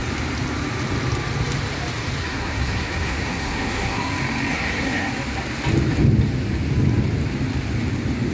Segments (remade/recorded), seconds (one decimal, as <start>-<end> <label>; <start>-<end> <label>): 0.0-2.2 recorded; 2.2-4.1 remade; 4.1-4.5 recorded; 4.5-5.1 remade; 5.1-8.3 recorded